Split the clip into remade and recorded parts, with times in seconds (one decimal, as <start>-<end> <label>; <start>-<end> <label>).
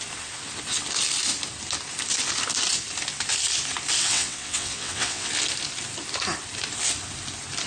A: 0.0-4.0 recorded; 4.0-5.3 remade; 5.3-7.7 recorded